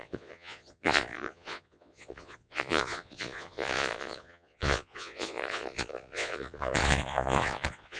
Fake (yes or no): yes